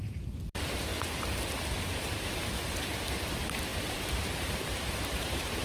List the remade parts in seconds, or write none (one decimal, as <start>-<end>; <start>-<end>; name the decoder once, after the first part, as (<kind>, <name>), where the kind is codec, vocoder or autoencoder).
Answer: 0.0-0.9 (vocoder, BigVGAN v2); 3.2-5.6